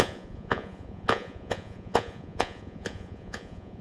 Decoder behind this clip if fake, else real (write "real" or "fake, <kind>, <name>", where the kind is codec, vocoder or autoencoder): fake, vocoder, Vocos